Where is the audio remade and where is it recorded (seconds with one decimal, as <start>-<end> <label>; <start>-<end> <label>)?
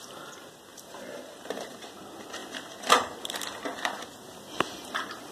0.0-0.7 recorded; 0.7-2.0 remade; 2.0-5.3 recorded